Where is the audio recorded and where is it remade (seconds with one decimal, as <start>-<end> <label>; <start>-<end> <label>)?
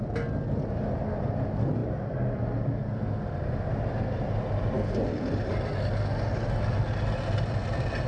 0.0-8.1 recorded